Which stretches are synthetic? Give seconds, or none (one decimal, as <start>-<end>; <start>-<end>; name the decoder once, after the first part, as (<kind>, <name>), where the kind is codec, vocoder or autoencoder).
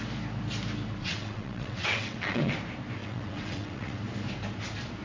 1.0-2.5 (vocoder, WaveNeXt); 3.0-4.0